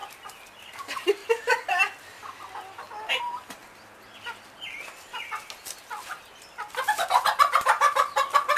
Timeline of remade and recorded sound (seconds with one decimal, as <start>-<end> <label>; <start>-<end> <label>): 0.0-1.2 remade; 1.2-3.2 recorded; 3.2-3.6 remade; 3.6-7.1 recorded; 7.1-8.6 remade